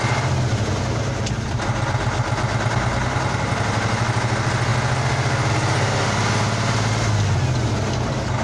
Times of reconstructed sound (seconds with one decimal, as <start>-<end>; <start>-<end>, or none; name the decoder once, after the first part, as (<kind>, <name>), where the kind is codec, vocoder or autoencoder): none